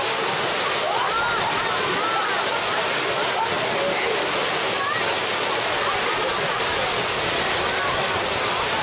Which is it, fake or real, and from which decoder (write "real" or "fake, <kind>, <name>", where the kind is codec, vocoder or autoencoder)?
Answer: real